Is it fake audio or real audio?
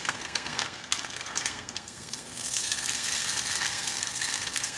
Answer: fake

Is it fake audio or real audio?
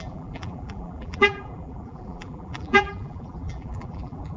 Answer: fake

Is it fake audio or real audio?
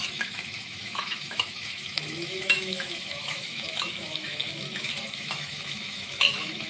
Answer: fake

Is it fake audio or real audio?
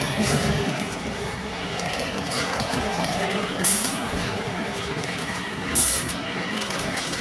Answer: fake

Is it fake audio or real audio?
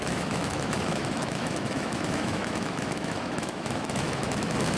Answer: fake